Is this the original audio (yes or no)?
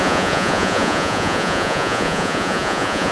no